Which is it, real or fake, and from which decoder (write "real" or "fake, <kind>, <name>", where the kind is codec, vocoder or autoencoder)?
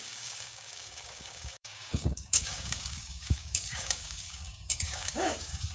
fake, codec, DAC